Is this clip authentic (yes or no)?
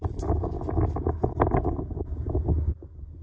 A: yes